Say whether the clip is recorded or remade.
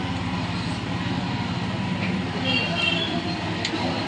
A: recorded